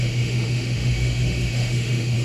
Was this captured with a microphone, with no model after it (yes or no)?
no